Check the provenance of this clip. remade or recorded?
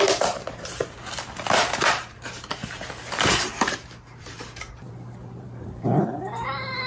remade